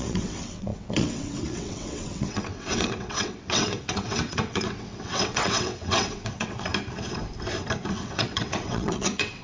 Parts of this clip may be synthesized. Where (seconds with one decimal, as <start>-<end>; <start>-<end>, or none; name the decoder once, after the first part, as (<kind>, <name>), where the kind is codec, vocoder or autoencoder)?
0.0-6.7 (vocoder, WaveNeXt); 7.9-9.4